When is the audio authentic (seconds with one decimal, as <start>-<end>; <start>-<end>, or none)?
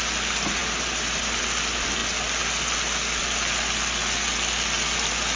0.0-5.4